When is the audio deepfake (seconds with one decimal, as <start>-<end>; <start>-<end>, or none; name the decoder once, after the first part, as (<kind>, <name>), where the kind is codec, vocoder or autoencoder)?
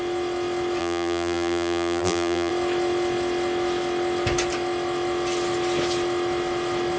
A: 0.8-2.5 (vocoder, BigVGAN v2)